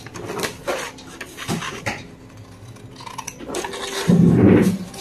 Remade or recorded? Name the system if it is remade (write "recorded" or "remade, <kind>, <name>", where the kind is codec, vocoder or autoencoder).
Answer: recorded